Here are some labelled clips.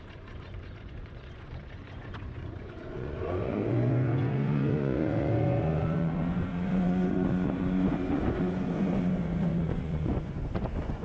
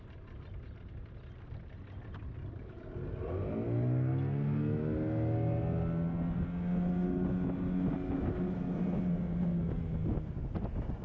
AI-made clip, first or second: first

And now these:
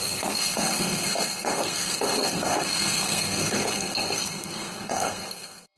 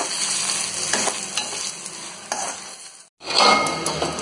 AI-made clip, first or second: first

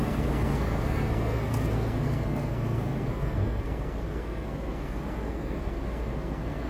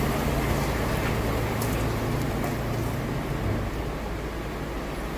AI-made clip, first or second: first